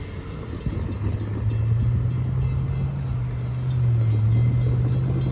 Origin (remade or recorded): recorded